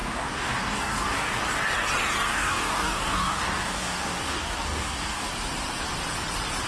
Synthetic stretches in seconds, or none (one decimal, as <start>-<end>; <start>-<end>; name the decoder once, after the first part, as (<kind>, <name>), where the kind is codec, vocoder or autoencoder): 0.0-1.4 (codec, DAC); 2.3-5.3